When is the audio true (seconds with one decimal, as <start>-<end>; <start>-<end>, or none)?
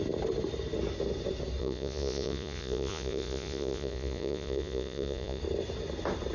0.0-1.6; 5.4-6.3